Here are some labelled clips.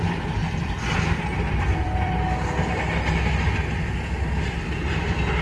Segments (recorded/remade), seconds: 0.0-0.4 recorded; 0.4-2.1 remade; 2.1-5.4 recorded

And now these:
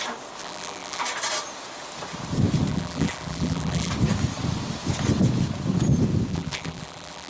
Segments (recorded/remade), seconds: 0.0-0.4 recorded; 0.4-1.0 remade; 1.0-2.7 recorded; 2.7-3.9 remade; 3.9-6.3 recorded; 6.3-7.3 remade

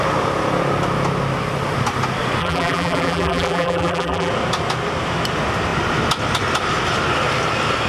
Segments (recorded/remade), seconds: 0.0-2.4 recorded; 2.4-4.3 remade; 4.3-7.9 recorded

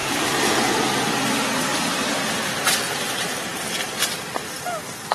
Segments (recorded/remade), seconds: 0.0-1.7 recorded; 1.7-2.6 remade; 2.6-5.1 recorded